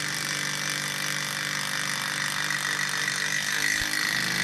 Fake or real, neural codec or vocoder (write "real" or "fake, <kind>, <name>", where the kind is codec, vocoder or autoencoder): real